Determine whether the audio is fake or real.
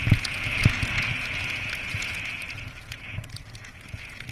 fake